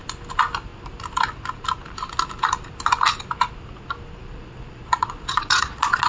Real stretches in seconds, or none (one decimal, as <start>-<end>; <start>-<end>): 0.0-4.2